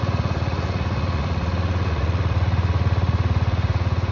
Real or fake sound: fake